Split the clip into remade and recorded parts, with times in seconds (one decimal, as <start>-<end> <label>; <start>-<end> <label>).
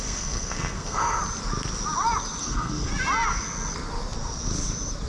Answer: 0.0-1.2 remade; 1.2-2.4 recorded; 2.4-2.9 remade; 2.9-5.1 recorded